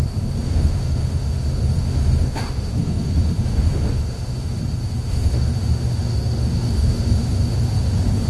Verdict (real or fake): fake